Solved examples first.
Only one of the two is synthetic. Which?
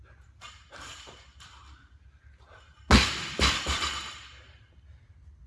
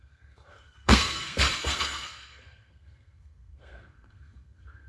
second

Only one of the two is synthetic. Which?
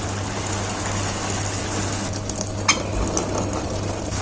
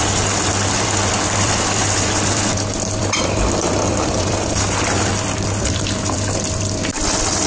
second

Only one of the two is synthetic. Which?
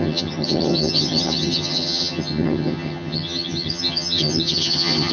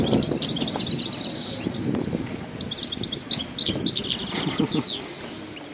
first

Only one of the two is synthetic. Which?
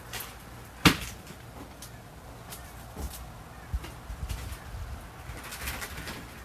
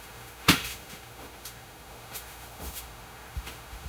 second